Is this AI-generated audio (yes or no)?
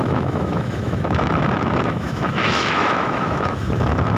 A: yes